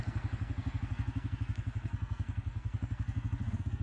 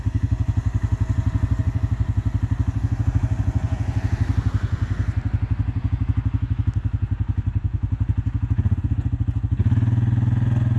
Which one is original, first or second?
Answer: second